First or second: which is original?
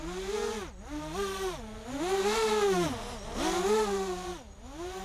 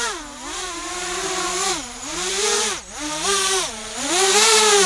first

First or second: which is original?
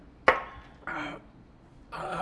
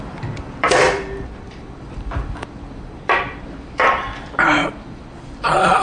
first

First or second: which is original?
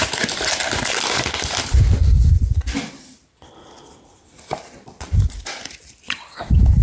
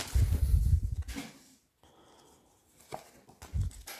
second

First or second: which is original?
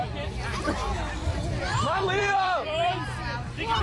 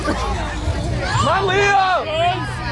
second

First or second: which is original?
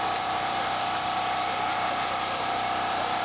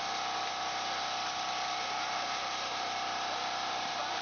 second